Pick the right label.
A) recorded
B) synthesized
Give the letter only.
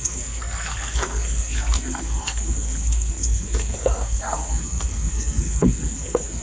B